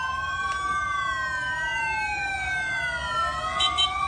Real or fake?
real